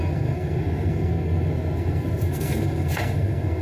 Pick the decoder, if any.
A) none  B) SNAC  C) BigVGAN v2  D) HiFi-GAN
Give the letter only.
B